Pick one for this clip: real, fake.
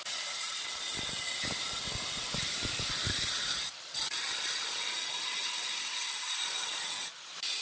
real